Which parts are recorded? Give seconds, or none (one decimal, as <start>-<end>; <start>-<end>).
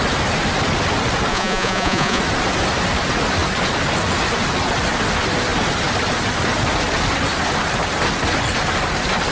0.0-1.3; 2.2-9.3